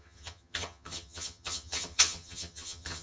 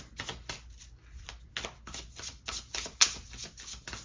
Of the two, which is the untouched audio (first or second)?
second